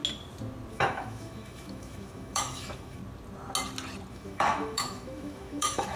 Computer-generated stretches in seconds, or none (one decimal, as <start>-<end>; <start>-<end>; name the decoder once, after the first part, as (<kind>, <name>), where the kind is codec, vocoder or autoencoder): 0.7-3.0 (autoencoder, DAC-VAE); 4.1-6.0